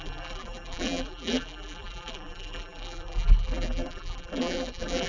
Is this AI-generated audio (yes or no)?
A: yes